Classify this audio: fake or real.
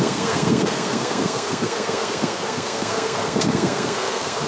fake